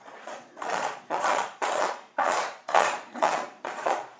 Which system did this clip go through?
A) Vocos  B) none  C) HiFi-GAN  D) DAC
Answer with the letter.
A